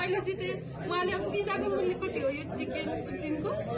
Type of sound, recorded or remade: recorded